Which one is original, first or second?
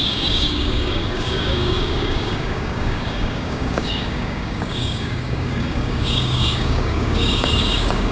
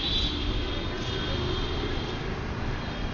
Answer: second